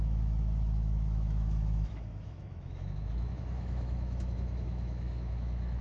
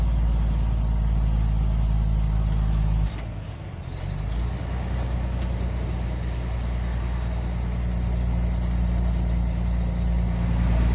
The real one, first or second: second